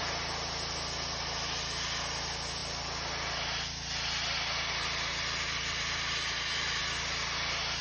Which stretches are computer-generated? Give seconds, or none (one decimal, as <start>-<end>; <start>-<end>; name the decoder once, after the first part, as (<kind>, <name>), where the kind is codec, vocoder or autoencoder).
none